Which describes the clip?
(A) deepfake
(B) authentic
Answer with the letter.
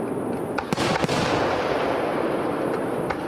B